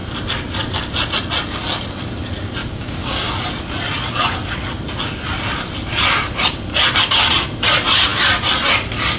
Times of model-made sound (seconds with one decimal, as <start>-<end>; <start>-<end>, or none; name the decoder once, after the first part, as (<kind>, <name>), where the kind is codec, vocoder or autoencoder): 2.6-3.3 (codec, DAC)